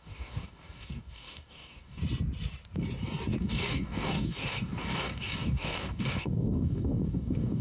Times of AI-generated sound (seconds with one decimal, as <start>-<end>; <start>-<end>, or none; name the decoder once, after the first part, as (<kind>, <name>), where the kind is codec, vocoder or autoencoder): 0.0-2.0 (codec, DAC); 3.4-7.6